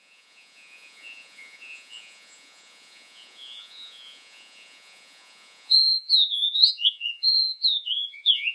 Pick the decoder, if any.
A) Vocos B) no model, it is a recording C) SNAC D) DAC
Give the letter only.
A